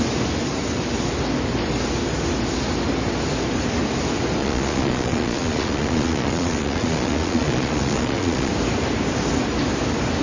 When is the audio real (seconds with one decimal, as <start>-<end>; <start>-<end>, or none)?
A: 0.0-4.4; 8.5-10.2